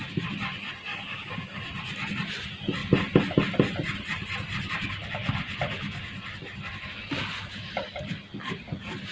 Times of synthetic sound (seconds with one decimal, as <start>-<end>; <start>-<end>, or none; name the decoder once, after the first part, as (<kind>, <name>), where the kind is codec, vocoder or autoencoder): 0.9-1.6 (codec, DAC)